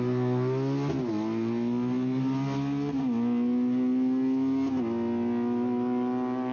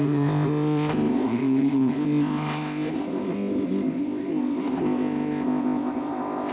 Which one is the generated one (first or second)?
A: second